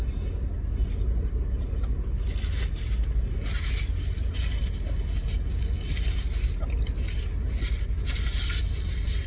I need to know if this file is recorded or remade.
recorded